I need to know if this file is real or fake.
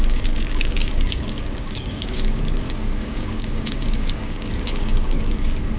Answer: fake